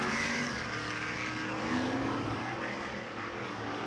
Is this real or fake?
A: fake